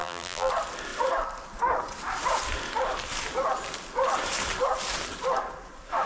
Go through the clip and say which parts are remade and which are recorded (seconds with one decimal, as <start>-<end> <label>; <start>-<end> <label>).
0.0-0.5 remade; 0.5-6.1 recorded